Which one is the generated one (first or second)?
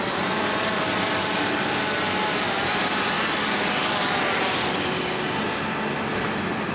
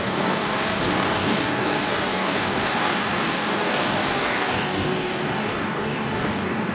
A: second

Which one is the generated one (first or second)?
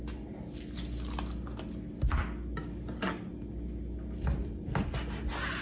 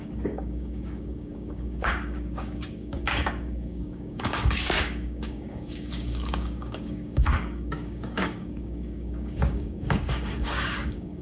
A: second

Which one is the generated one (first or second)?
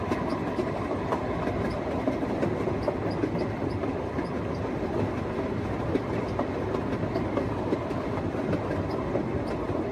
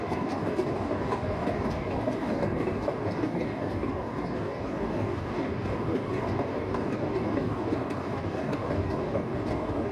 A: second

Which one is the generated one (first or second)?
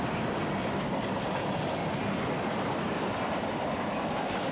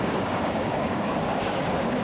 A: second